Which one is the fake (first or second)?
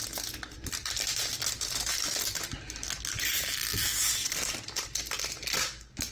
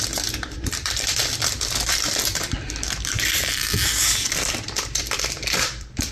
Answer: second